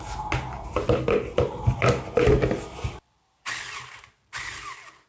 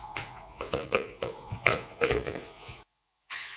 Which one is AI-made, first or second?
second